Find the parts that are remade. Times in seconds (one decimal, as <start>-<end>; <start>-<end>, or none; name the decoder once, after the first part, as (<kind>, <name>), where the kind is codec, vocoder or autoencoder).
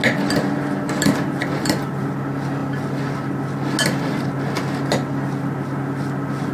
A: none